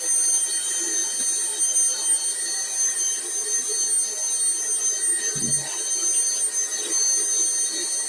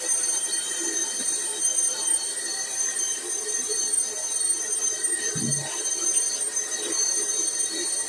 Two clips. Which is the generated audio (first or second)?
second